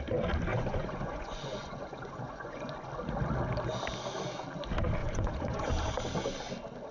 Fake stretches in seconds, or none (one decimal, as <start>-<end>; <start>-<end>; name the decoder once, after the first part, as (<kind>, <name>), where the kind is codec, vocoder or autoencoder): 0.5-2.9 (vocoder, Vocos); 5.0-5.7